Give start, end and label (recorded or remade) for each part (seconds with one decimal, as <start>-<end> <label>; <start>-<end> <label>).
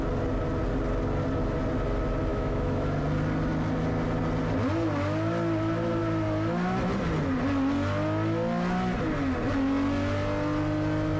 0.0-2.3 recorded; 2.3-3.0 remade; 3.0-11.2 recorded